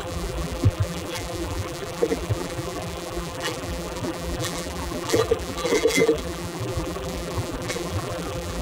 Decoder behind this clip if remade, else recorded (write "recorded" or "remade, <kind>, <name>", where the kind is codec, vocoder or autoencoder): remade, vocoder, BigVGAN v2